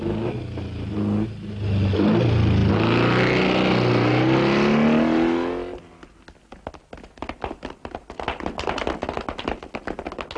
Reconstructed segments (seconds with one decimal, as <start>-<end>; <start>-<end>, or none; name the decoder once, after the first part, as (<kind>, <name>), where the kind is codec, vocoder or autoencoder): none